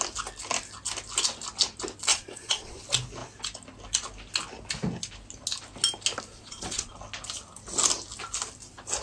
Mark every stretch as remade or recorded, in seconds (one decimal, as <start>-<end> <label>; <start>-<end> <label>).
0.0-2.1 recorded; 2.1-2.8 remade; 2.8-6.3 recorded; 6.3-6.9 remade; 6.9-9.0 recorded